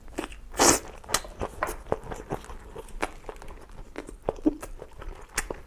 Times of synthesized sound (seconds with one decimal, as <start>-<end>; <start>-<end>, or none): none